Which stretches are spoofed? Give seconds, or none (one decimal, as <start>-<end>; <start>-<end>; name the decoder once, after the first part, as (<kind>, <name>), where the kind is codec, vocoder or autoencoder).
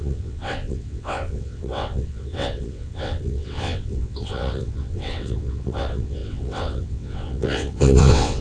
0.0-8.4 (vocoder, WaveNeXt)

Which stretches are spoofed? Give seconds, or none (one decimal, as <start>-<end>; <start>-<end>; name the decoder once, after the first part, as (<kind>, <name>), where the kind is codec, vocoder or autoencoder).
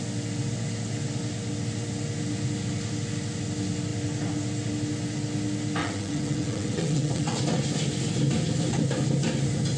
5.8-7.4 (vocoder, WaveNeXt)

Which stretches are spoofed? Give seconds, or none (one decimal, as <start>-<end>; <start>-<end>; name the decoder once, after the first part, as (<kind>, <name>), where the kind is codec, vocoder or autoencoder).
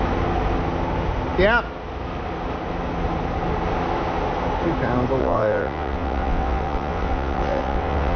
5.2-8.2 (vocoder, WaveNeXt)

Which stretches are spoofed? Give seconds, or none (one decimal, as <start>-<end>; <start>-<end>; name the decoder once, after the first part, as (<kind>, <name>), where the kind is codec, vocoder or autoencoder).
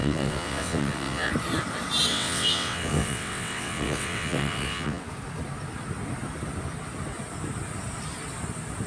0.0-1.3 (vocoder, WaveNeXt); 2.1-5.0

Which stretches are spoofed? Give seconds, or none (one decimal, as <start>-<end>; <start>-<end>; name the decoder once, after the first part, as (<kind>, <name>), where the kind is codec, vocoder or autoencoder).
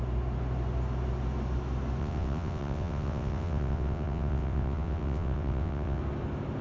2.0-6.0 (vocoder, WaveNeXt)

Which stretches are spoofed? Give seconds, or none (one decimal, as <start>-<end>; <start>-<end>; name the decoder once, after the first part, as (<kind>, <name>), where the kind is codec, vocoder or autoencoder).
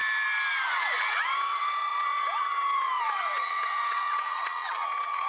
0.7-5.3 (vocoder, WaveNeXt)